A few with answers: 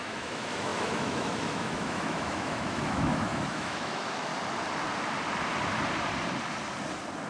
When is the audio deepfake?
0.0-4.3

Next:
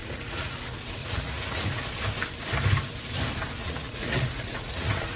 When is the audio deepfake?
0.0-0.5; 1.0-1.8; 3.6-5.2

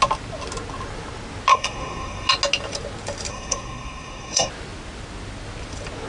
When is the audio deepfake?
1.5-2.3; 3.3-4.5